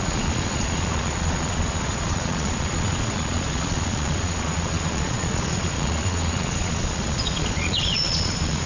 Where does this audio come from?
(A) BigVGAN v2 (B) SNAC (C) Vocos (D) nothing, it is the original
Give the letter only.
C